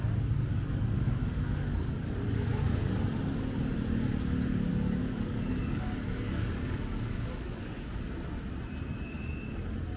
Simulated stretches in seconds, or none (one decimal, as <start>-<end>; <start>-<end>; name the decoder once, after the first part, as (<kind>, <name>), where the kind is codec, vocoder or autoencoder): 0.5-2.9 (codec, DAC); 4.7-8.0